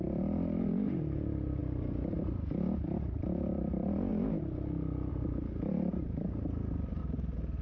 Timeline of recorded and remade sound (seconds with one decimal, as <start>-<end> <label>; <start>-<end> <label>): 0.0-1.6 remade; 1.6-2.1 recorded; 2.1-4.1 remade; 4.1-5.1 recorded; 5.1-7.0 remade; 7.0-7.6 recorded